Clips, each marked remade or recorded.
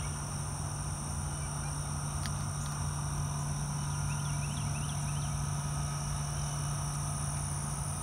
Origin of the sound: recorded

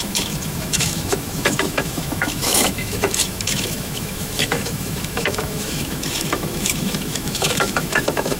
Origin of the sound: remade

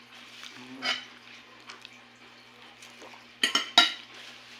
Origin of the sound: recorded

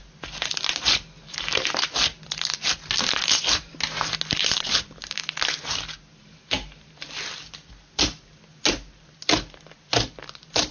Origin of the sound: recorded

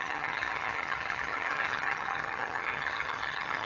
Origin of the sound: remade